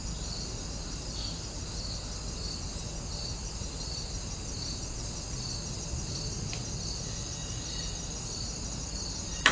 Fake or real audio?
real